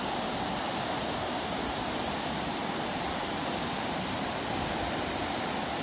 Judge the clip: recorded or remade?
recorded